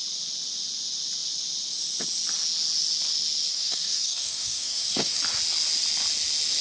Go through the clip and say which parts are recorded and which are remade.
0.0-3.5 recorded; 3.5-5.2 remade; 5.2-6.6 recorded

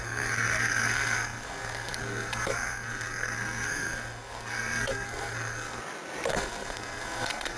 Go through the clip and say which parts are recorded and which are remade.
0.0-5.8 remade; 5.8-6.3 recorded; 6.3-7.6 remade